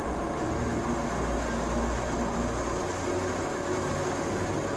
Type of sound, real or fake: real